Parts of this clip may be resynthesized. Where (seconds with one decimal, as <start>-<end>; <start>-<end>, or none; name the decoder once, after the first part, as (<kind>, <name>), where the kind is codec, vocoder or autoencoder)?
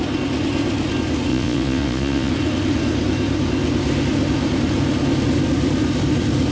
1.3-2.3 (vocoder, Vocos)